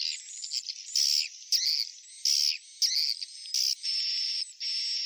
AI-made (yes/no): no